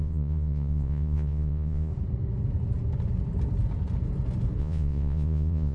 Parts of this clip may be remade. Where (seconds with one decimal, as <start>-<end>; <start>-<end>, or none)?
0.0-1.9; 4.6-5.7